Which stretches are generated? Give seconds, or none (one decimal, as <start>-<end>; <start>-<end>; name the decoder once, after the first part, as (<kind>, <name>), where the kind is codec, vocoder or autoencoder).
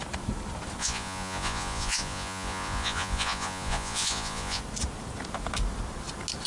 0.8-4.6 (vocoder, Vocos)